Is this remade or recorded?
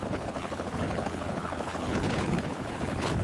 remade